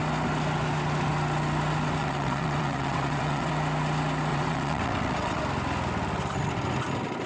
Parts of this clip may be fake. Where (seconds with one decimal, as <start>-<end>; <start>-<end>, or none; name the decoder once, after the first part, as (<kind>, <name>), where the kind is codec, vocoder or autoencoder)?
2.0-3.5 (vocoder, WaveNeXt); 4.3-5.4